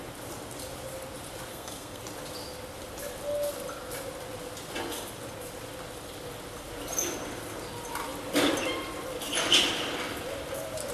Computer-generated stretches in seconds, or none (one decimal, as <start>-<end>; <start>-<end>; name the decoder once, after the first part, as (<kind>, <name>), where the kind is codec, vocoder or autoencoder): 1.5-2.0 (codec, SNAC)